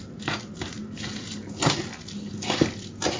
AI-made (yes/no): no